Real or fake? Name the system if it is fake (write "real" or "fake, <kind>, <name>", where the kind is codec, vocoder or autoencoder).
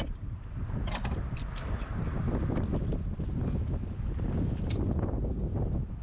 real